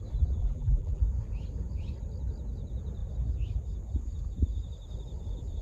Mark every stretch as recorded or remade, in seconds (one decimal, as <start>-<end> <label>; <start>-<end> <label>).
0.0-0.4 recorded; 0.4-1.0 remade; 1.0-5.6 recorded